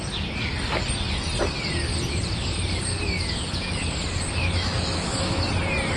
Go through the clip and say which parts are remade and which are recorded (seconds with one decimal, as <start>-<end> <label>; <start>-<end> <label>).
0.0-4.4 recorded; 4.4-5.5 remade; 5.5-6.0 recorded